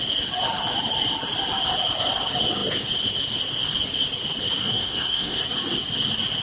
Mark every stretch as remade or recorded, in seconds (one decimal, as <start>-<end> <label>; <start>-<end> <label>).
0.0-4.6 recorded; 4.6-5.4 remade; 5.4-6.4 recorded